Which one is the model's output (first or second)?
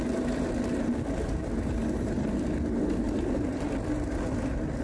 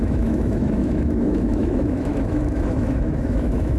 second